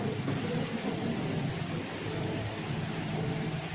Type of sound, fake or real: real